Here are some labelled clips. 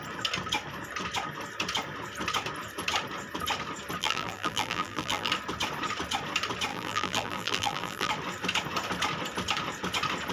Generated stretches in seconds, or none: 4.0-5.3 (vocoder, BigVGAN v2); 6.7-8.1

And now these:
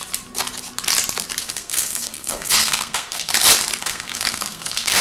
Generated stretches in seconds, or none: 1.4-3.3 (codec, SNAC); 3.8-5.0

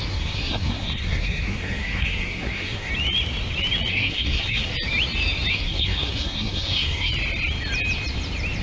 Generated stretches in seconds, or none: 0.0-2.9 (codec, SNAC); 3.9-4.7; 5.5-7.1

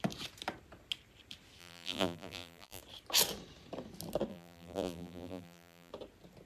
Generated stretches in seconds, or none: 1.6-2.8 (vocoder, BigVGAN v2); 4.3-5.9

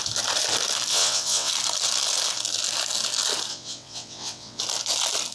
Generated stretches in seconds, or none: 0.9-1.5 (vocoder, WaveNeXt); 3.5-4.6